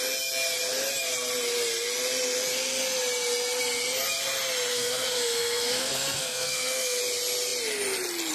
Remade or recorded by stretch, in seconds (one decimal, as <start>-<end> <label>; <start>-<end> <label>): 0.0-4.7 recorded; 4.7-7.0 remade; 7.0-8.3 recorded